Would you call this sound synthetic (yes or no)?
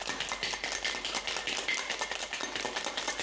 no